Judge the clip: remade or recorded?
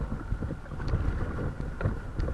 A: recorded